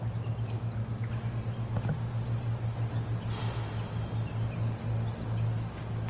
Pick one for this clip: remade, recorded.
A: recorded